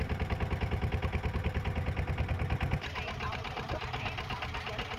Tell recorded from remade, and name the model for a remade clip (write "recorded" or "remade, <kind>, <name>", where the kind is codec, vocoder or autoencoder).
recorded